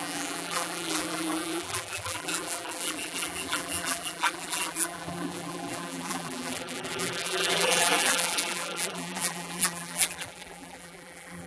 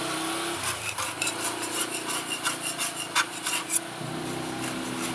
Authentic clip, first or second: second